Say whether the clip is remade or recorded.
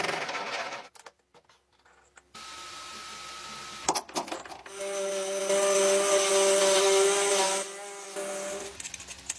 recorded